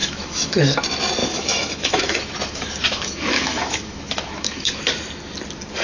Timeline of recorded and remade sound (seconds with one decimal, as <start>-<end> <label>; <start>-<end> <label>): 0.0-0.6 remade; 0.6-1.2 recorded; 1.2-4.7 remade; 4.7-5.8 recorded